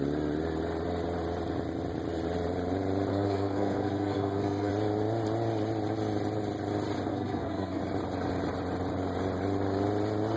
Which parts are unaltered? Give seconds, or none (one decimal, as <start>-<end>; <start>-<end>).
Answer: 0.0-3.1; 4.7-7.1; 7.8-10.4